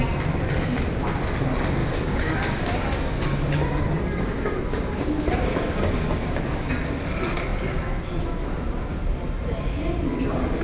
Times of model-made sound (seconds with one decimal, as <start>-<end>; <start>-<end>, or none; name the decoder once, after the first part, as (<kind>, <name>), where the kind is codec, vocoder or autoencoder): 1.8-6.7 (codec, DAC)